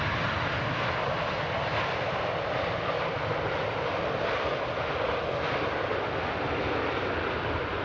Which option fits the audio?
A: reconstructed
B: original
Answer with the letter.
B